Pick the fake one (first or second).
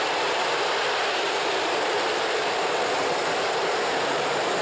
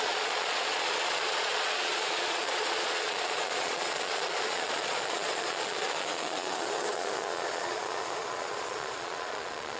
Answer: second